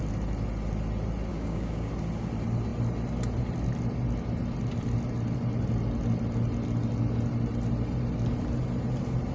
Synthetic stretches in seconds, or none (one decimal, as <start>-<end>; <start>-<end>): 1.3-1.9